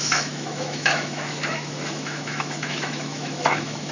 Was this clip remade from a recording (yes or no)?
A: yes